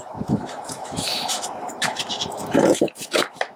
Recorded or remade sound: remade